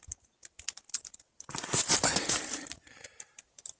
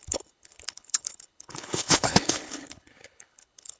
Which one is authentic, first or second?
first